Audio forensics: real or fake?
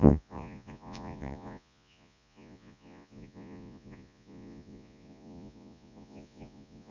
fake